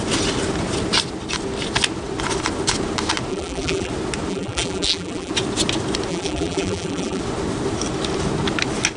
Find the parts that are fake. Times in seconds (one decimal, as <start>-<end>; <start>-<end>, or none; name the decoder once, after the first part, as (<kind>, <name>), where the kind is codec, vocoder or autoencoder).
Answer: 3.3-3.9 (vocoder, BigVGAN v2); 4.3-5.3; 6.1-7.2